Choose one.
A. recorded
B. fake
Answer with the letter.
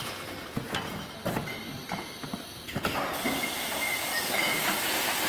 A